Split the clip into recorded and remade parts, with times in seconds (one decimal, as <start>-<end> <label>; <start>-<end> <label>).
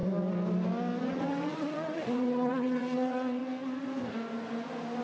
0.0-1.0 recorded; 1.0-3.4 remade; 3.4-5.0 recorded